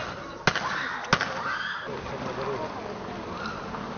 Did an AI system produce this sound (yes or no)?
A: no